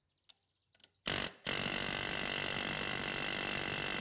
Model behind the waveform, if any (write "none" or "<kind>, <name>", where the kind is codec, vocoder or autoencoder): none